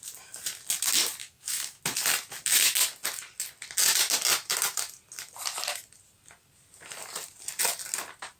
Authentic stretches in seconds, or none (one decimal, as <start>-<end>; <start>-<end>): 0.0-1.2; 1.8-8.4